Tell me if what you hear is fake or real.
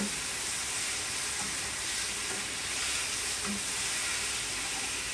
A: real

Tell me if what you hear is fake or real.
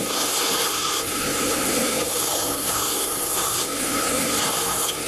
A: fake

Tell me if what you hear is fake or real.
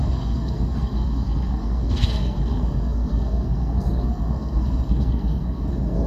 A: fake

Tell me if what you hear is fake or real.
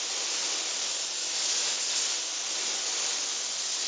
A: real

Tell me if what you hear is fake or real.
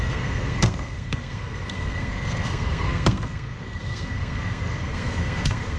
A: fake